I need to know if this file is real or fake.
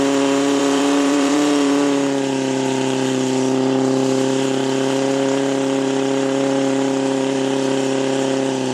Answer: fake